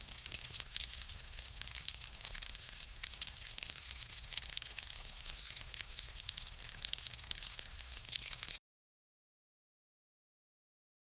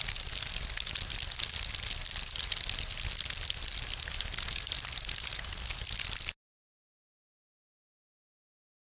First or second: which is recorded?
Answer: second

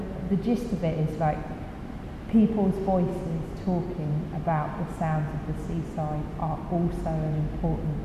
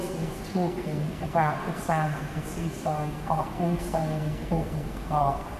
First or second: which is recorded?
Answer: first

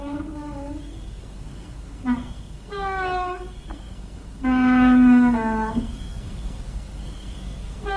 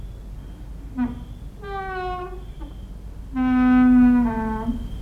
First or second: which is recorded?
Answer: second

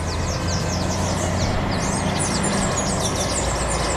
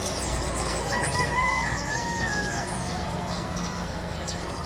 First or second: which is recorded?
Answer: first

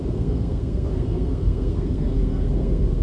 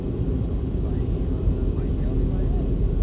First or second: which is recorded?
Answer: second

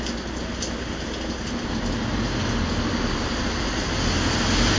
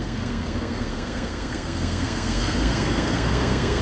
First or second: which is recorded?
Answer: first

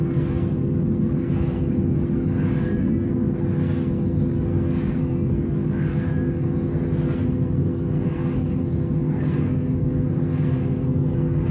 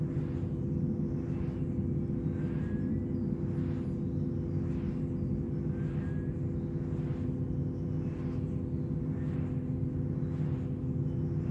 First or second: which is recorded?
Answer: second